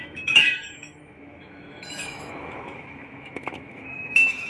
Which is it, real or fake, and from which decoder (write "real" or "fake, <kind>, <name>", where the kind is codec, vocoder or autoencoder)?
fake, autoencoder, DAC-VAE